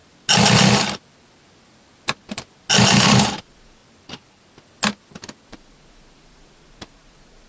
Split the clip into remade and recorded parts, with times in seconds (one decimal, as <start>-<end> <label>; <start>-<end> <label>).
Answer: 0.0-3.4 recorded; 3.4-3.8 remade; 3.8-5.5 recorded; 5.5-7.5 remade